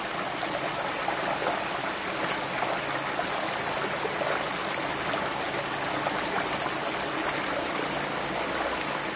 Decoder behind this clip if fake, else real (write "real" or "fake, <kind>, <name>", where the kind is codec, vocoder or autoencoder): real